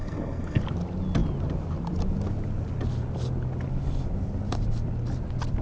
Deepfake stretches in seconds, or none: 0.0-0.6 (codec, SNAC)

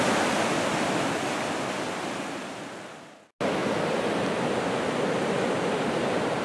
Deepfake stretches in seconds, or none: none

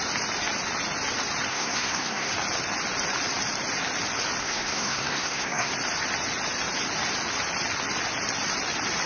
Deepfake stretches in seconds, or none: 1.5-2.3 (codec, SNAC); 4.4-5.7

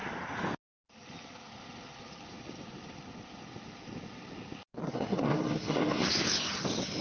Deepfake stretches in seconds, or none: 4.8-6.1 (codec, SNAC)